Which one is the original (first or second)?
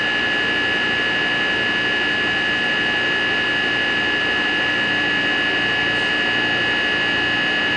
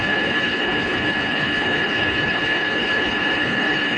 first